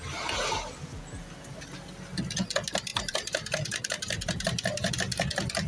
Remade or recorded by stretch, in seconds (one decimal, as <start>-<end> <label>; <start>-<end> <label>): 0.0-2.9 recorded; 2.9-4.9 remade; 4.9-5.7 recorded